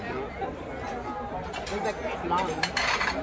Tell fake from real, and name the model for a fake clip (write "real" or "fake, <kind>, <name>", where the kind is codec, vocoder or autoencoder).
real